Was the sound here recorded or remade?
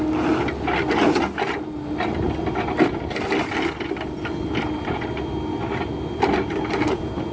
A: recorded